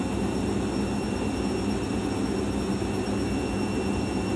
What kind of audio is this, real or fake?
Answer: real